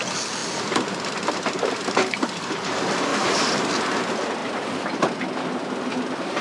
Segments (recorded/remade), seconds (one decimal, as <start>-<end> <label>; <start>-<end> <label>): 0.0-3.1 recorded; 3.1-3.7 remade; 3.7-6.4 recorded